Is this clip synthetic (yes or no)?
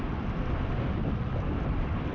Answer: no